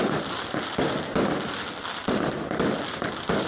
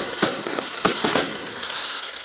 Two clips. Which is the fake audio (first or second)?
second